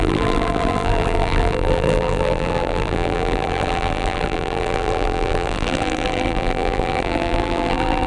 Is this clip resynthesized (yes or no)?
yes